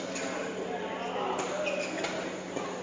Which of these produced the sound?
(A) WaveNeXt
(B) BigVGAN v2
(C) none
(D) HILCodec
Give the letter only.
C